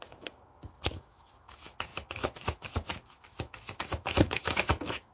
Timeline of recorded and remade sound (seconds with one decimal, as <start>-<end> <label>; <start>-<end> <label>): 0.0-5.1 remade